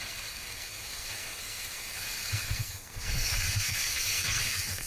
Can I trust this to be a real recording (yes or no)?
no